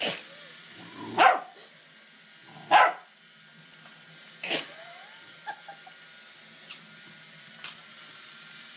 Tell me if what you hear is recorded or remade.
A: recorded